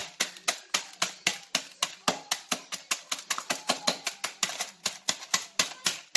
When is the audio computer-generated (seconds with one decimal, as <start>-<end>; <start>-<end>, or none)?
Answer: none